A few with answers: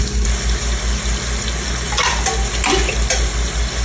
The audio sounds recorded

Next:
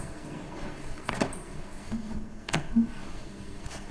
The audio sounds remade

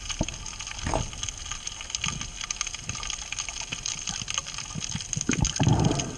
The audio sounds recorded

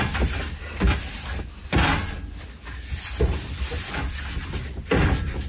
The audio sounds recorded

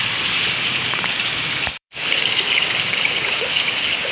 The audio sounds remade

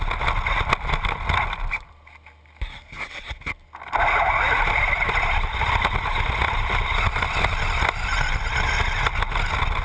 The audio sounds recorded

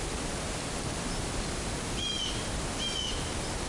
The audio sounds recorded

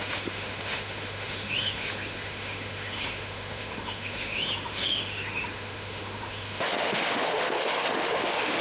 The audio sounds remade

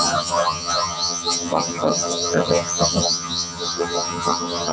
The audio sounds remade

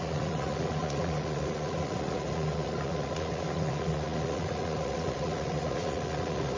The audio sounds remade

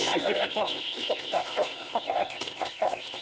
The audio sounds remade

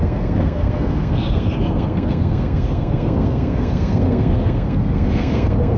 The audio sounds remade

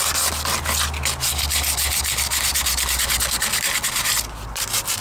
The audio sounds recorded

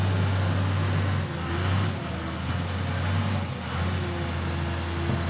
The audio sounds recorded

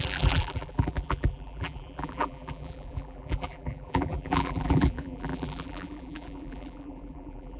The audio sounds remade